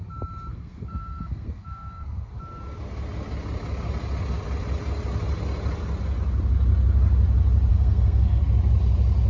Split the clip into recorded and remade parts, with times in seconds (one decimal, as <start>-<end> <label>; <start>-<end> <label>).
0.0-0.5 recorded; 0.5-2.3 remade; 2.3-7.7 recorded; 7.7-8.4 remade; 8.4-9.3 recorded